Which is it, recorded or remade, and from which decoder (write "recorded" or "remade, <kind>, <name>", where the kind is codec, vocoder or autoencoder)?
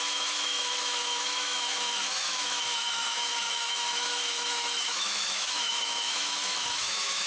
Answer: remade, autoencoder, DAC-VAE